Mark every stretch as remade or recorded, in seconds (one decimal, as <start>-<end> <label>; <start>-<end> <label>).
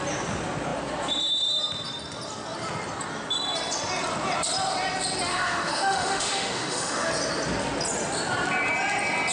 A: 0.0-5.3 recorded; 5.3-7.1 remade; 7.1-9.3 recorded